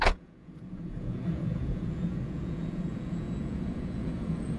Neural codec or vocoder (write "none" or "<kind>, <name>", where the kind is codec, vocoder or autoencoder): vocoder, Vocos